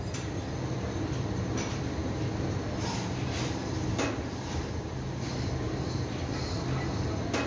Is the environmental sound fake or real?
real